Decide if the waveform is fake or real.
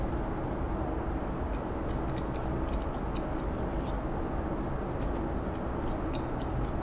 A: real